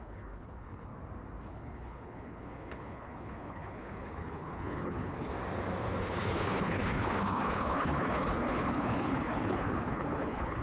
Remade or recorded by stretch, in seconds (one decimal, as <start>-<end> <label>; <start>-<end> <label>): 0.0-0.9 remade; 0.9-1.5 recorded; 1.5-5.3 remade; 5.3-6.0 recorded; 6.0-10.6 remade